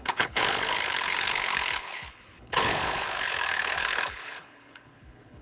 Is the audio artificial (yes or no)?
yes